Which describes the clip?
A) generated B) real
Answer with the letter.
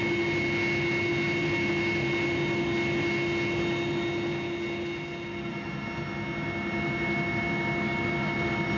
B